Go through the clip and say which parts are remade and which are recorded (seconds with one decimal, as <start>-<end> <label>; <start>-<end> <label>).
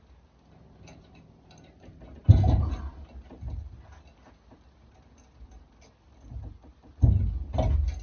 0.0-8.0 recorded